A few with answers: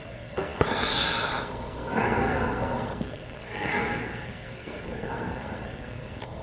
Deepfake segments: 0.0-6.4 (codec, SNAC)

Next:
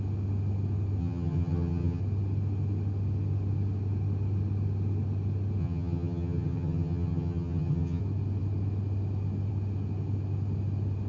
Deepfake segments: 1.0-2.0 (vocoder, HiFi-GAN); 5.6-8.0

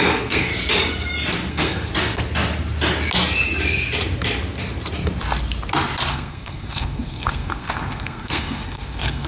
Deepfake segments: 0.0-0.5 (codec, SNAC); 1.5-1.9; 6.1-9.3

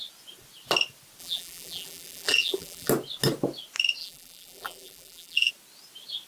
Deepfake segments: 1.2-2.9 (vocoder, BigVGAN v2); 4.0-5.5

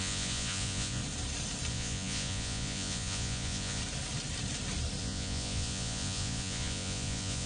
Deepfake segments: 0.0-1.0 (vocoder, Vocos); 1.7-3.8; 5.0-7.5

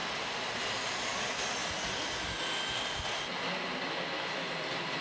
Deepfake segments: 0.0-0.7 (vocoder, BigVGAN v2)

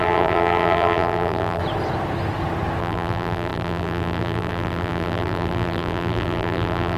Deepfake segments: 0.0-1.6 (vocoder, BigVGAN v2); 2.8-7.0